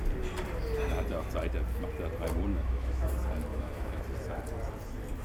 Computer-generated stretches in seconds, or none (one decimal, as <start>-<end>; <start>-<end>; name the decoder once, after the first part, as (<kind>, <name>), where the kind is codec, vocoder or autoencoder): 2.5-3.1 (autoencoder, DAC-VAE); 3.5-4.0

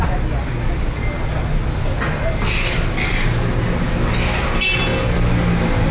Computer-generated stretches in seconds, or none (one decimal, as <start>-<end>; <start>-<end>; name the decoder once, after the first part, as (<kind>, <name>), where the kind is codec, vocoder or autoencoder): none

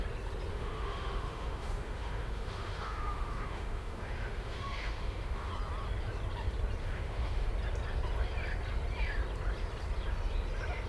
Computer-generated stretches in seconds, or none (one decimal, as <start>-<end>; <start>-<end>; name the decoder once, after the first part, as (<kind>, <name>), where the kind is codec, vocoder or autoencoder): 0.5-5.5 (autoencoder, DAC-VAE); 6.8-7.5

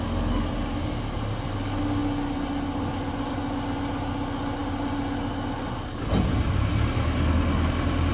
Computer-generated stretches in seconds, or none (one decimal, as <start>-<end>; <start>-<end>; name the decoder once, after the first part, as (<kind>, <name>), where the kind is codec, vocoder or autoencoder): none

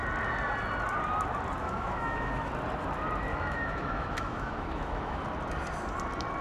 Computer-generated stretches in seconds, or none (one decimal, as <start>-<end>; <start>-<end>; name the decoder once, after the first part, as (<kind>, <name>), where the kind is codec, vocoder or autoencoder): 1.6-2.5 (autoencoder, DAC-VAE); 3.3-5.2

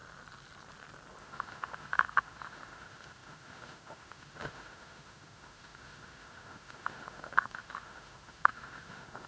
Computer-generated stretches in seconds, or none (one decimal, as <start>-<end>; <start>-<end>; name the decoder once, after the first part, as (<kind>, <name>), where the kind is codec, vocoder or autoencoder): 1.2-9.3 (autoencoder, DAC-VAE)

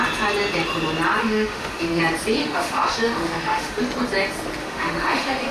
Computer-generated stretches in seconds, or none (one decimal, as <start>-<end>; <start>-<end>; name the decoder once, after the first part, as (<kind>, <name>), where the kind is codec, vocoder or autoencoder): 1.2-2.0 (autoencoder, DAC-VAE); 2.4-3.8; 4.6-5.5